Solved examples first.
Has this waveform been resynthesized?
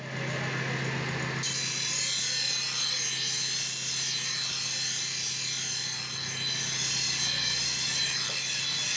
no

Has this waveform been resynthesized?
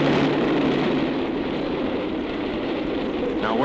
no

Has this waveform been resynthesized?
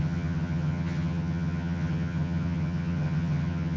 yes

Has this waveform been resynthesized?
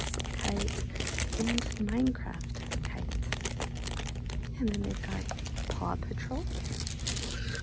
no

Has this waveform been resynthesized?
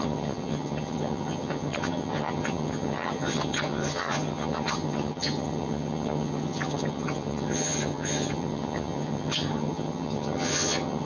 yes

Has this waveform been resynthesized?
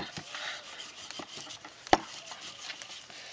no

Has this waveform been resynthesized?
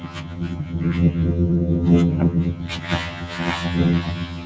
yes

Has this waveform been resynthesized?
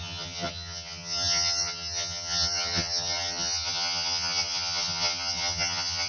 yes